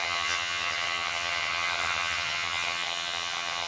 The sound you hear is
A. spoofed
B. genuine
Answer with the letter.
A